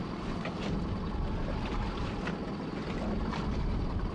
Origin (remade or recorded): recorded